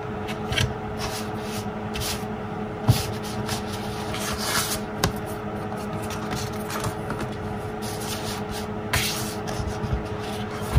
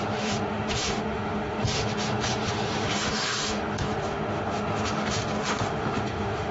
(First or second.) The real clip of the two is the first